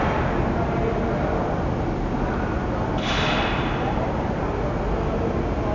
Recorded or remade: recorded